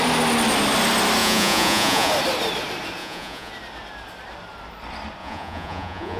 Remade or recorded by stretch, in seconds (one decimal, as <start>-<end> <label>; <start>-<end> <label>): 0.0-1.2 recorded; 1.2-2.1 remade; 2.1-3.0 recorded; 3.0-3.5 remade; 3.5-5.2 recorded; 5.2-6.2 remade